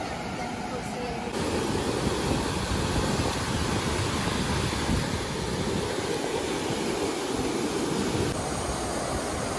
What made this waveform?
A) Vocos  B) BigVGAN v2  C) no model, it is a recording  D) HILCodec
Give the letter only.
C